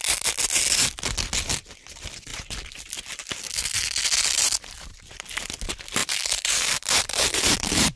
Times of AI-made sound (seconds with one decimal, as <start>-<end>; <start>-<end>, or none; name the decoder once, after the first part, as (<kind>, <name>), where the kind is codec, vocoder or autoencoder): 6.0-8.0 (vocoder, BigVGAN v2)